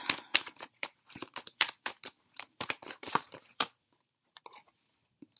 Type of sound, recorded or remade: remade